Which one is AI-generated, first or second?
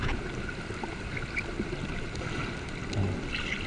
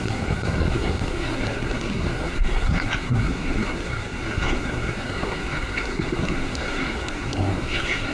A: second